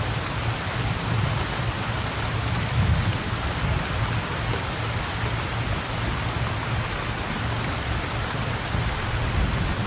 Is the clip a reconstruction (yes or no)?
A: no